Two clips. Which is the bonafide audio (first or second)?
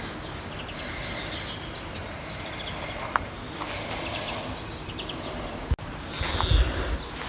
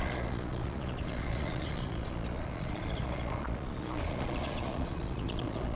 first